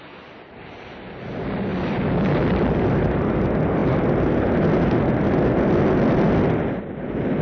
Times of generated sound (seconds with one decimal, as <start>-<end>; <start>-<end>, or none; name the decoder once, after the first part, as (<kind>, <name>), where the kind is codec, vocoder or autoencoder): 1.7-2.8 (vocoder, BigVGAN v2)